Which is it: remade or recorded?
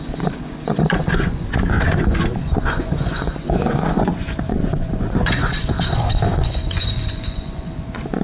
remade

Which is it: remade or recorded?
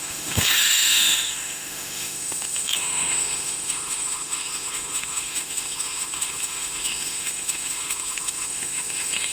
remade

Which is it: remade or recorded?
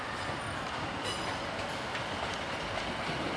recorded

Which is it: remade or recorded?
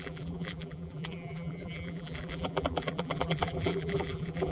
remade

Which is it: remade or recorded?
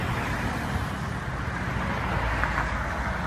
recorded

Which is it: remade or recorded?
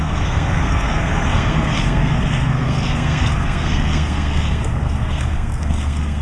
remade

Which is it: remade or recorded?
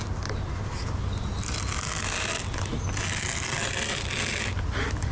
recorded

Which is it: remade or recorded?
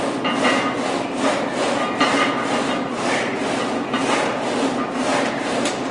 recorded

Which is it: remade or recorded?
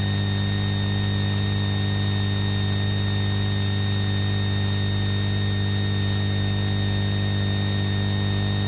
recorded